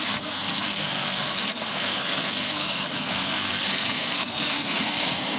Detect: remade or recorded remade